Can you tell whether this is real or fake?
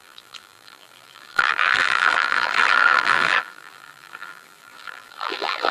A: fake